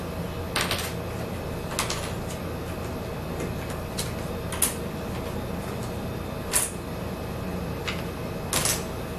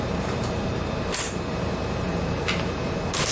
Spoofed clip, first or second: second